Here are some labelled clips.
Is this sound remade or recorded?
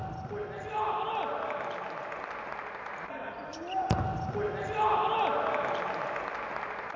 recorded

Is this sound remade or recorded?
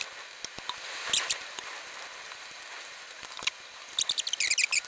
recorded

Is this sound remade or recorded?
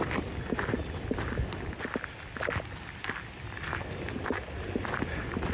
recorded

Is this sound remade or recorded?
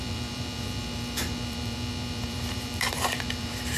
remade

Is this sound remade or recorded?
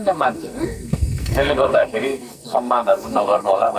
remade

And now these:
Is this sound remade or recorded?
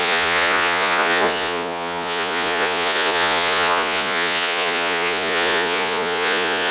remade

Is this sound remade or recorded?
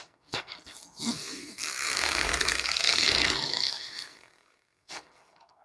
remade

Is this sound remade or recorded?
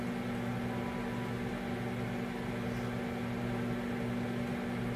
recorded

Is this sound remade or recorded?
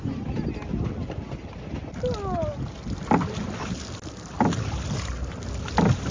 recorded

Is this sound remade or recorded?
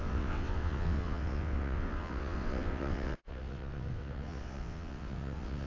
remade